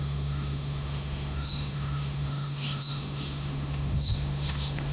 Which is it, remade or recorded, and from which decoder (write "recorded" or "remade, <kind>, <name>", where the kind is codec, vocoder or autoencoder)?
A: remade, autoencoder, DAC-VAE